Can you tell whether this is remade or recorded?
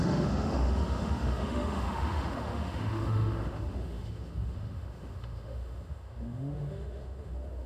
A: remade